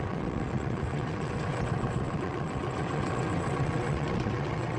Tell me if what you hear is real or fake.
fake